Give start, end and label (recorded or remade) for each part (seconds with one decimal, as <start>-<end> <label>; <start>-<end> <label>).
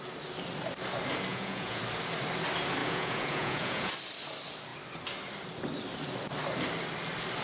0.0-1.3 recorded; 1.3-1.8 remade; 1.8-2.8 recorded; 2.8-3.9 remade; 3.9-7.4 recorded